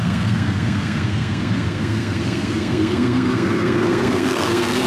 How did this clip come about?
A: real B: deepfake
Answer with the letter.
B